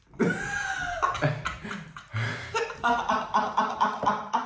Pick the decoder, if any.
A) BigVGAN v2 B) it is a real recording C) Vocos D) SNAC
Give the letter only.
B